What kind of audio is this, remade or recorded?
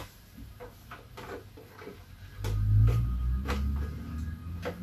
recorded